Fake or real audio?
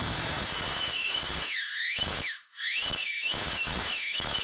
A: fake